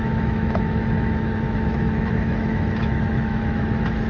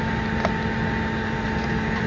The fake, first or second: first